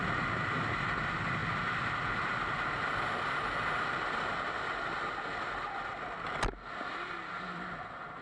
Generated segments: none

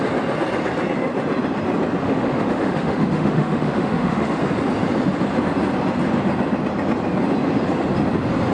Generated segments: 2.0-4.4 (autoencoder, DAC-VAE)

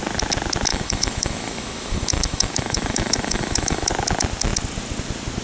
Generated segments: 0.7-3.9 (autoencoder, DAC-VAE)

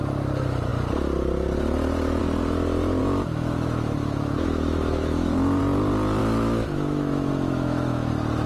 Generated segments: 3.0-5.6 (autoencoder, DAC-VAE); 6.2-8.1